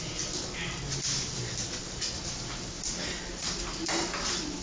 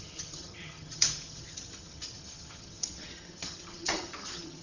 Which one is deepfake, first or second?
second